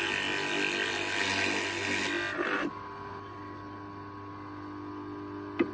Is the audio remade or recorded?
recorded